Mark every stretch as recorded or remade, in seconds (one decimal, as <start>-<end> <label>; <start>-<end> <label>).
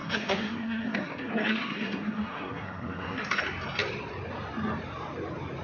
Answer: 0.0-3.4 remade; 3.4-5.6 recorded